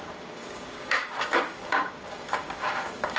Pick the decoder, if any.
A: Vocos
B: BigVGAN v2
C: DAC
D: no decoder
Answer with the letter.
C